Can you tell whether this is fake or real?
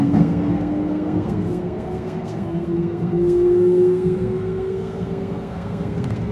fake